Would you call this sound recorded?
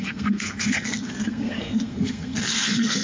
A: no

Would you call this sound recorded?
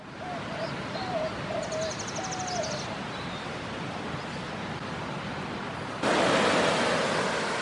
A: yes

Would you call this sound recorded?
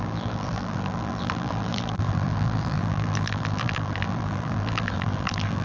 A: no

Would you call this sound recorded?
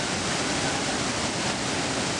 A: yes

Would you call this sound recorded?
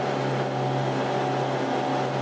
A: yes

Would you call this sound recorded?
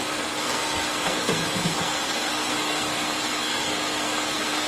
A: no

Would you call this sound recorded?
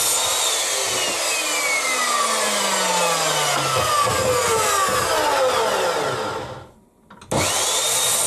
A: yes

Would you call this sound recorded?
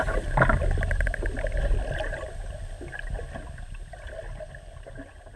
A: yes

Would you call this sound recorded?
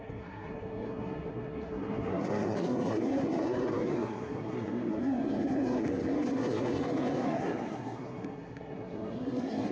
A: no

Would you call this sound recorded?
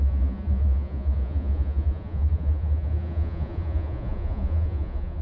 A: no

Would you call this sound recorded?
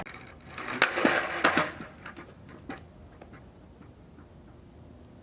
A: yes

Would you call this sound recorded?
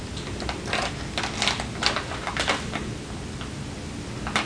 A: yes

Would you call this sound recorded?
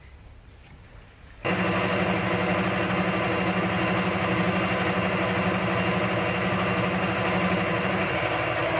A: yes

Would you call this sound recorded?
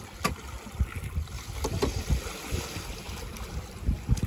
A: yes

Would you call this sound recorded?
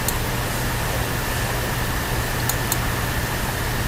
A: yes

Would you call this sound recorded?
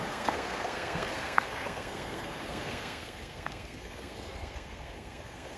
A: no